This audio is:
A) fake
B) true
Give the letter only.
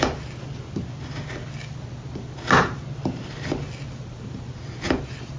B